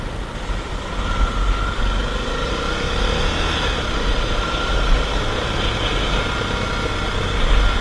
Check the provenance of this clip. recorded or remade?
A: recorded